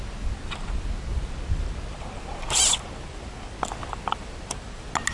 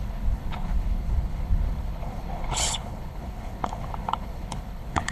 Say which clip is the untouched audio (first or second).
first